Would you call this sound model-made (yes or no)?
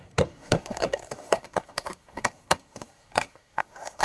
yes